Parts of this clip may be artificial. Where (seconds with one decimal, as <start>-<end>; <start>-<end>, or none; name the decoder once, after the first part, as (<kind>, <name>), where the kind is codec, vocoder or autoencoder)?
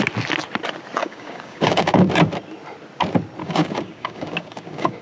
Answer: 1.0-2.1 (codec, DAC); 3.4-5.0